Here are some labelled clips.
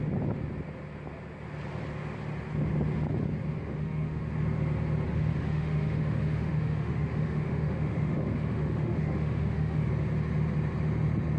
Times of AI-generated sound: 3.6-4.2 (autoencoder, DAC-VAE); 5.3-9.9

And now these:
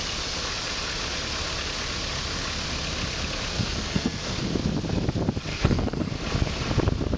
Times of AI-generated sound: 3.5-4.4 (codec, SNAC); 5.5-6.1